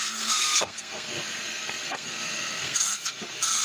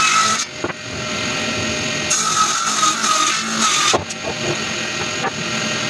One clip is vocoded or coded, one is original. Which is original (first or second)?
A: second